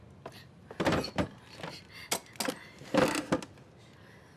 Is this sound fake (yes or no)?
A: no